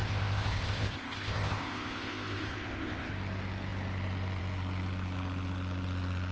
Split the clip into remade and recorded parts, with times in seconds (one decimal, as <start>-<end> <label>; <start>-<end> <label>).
0.0-3.1 remade; 3.1-6.3 recorded